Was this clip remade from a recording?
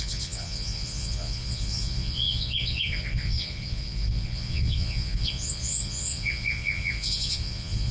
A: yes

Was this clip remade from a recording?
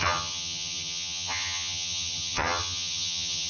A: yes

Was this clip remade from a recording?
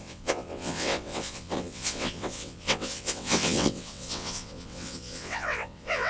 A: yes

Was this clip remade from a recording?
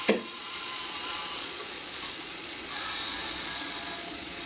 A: yes